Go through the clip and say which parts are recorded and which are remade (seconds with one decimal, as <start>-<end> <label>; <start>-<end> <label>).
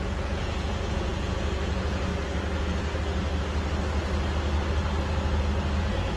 0.0-2.1 remade; 2.1-5.8 recorded; 5.8-6.2 remade